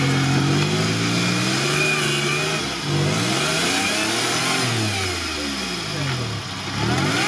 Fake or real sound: real